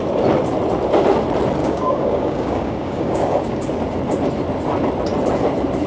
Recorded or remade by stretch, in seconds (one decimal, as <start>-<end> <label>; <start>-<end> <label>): 0.0-1.6 recorded; 1.6-3.6 remade; 3.6-5.9 recorded